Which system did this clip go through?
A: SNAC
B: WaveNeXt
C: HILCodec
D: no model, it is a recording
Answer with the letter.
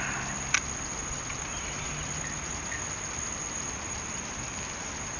D